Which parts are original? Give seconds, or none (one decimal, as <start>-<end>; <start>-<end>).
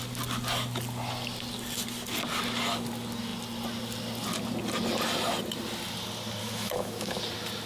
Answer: 0.0-6.4; 7.2-7.7